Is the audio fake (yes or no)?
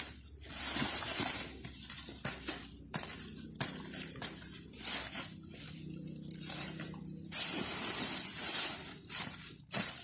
yes